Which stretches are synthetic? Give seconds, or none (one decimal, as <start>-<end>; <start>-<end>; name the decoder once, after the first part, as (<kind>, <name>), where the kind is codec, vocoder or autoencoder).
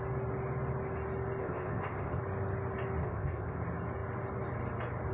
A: 1.4-2.2 (codec, ZipCodec); 3.0-3.6